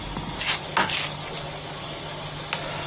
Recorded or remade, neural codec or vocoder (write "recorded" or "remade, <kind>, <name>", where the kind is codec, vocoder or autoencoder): recorded